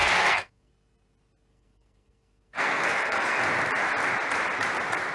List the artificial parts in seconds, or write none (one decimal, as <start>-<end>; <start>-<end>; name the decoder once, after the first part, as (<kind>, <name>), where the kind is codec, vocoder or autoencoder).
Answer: 0.0-0.7 (codec, SNAC); 1.5-3.5